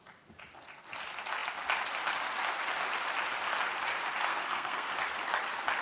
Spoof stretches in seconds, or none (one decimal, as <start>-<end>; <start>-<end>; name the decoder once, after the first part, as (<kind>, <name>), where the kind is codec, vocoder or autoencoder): 4.3-4.9 (codec, SNAC)